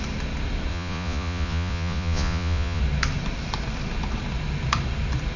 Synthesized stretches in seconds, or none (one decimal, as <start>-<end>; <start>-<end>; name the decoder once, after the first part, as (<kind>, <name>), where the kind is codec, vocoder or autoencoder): 0.7-2.8 (vocoder, Vocos)